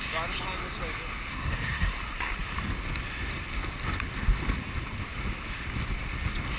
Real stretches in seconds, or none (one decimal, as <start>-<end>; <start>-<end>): 0.0-1.3; 2.0-6.6